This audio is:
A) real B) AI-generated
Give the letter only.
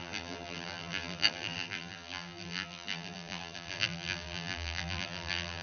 B